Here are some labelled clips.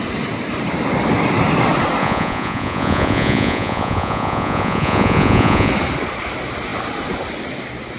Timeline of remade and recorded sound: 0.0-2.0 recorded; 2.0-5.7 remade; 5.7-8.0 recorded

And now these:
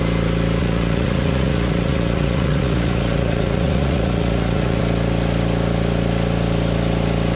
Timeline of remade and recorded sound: 0.0-0.6 recorded; 0.6-4.8 remade; 4.8-7.4 recorded